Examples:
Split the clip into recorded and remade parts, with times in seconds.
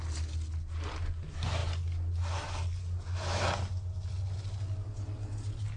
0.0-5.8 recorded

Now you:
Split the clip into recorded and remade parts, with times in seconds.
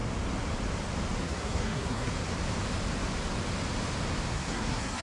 0.0-1.2 recorded; 1.2-2.1 remade; 2.1-4.3 recorded; 4.3-5.0 remade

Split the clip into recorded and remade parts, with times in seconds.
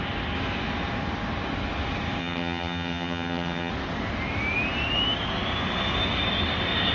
0.0-2.2 recorded; 2.2-3.7 remade; 3.7-6.9 recorded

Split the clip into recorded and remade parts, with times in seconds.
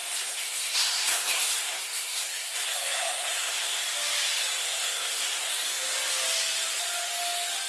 0.0-3.8 remade; 3.8-4.6 recorded; 4.6-5.5 remade; 5.5-7.7 recorded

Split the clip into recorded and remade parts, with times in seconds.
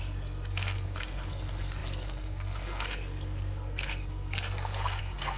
0.0-5.4 remade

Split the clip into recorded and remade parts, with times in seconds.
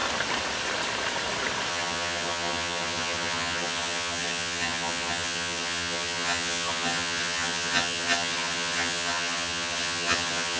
0.0-1.7 recorded; 1.7-10.6 remade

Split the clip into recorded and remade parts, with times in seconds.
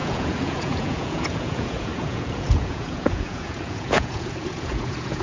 0.0-5.2 remade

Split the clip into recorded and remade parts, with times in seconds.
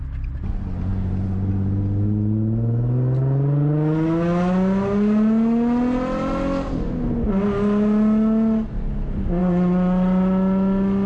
0.0-11.1 recorded